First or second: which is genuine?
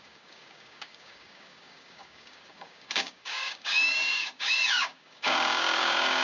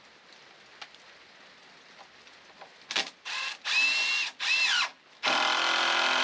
second